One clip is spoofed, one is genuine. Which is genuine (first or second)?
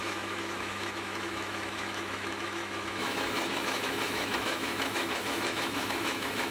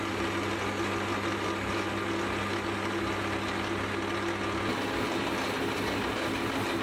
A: second